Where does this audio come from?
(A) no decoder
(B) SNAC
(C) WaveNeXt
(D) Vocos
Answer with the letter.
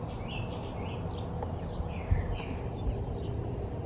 A